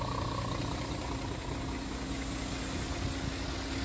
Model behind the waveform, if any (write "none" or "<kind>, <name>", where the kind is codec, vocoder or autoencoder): none